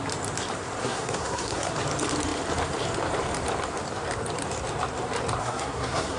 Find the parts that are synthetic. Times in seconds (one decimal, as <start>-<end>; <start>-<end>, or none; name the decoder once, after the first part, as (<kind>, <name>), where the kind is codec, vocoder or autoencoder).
0.8-1.7 (codec, SNAC); 5.4-6.2